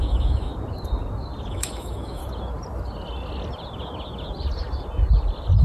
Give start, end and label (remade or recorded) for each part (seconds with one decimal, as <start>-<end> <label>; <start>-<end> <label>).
0.0-0.5 remade; 0.5-1.5 recorded; 1.5-2.2 remade; 2.2-5.6 recorded